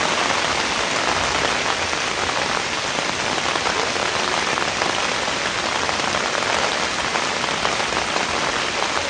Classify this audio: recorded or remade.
recorded